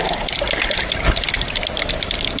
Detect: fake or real real